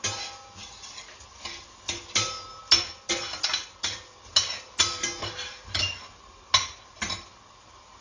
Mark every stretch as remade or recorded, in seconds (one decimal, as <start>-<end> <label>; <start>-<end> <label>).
0.0-8.0 recorded